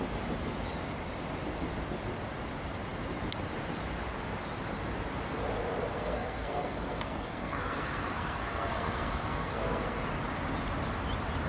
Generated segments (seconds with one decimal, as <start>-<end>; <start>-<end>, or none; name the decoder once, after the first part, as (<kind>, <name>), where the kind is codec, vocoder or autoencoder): 5.9-10.0 (codec, SNAC)